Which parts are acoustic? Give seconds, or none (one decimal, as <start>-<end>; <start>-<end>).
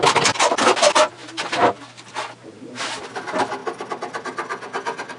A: 0.0-5.2